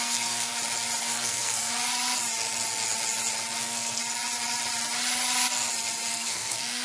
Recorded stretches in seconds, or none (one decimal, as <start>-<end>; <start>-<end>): 0.5-1.0; 1.7-3.6; 4.0-6.1